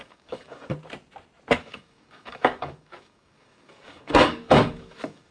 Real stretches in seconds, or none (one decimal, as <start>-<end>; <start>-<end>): 0.7-1.6